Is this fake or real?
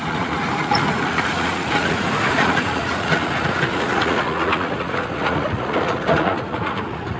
fake